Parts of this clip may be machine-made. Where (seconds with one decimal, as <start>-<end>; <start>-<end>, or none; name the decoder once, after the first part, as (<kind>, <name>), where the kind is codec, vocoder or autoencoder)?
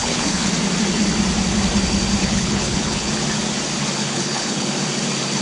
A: 0.0-0.5 (codec, HILCodec); 2.2-3.1; 4.0-4.7